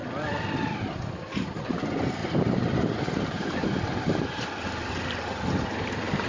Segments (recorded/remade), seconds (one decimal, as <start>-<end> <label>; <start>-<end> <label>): 0.0-2.2 recorded; 2.2-6.3 remade